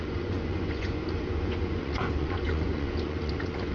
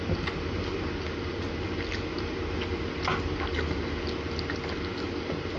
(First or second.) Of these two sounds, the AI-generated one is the first